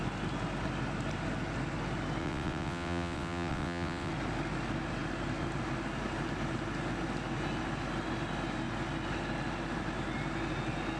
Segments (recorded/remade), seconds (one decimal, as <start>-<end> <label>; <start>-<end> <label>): 0.0-2.2 recorded; 2.2-4.1 remade; 4.1-11.0 recorded